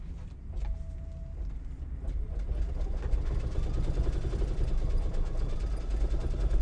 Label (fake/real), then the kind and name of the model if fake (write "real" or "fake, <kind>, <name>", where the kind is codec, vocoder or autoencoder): real